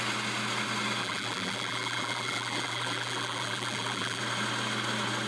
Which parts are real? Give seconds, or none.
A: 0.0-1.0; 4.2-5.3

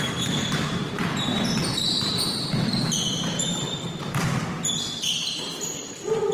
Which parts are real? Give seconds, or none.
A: 4.4-5.6